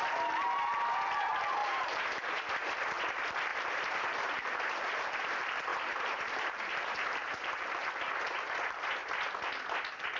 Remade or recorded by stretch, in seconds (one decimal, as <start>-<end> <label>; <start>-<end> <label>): 0.0-1.6 recorded; 1.6-2.7 remade; 2.7-3.5 recorded; 3.5-5.3 remade; 5.3-5.7 recorded; 5.7-7.9 remade; 7.9-10.2 recorded